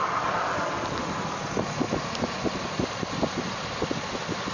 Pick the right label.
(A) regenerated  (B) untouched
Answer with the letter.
B